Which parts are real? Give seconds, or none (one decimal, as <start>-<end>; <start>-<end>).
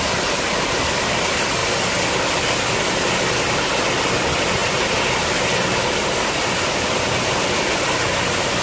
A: 0.0-8.6